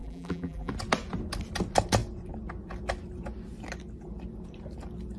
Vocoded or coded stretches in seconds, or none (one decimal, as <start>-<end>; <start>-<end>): 0.0-0.7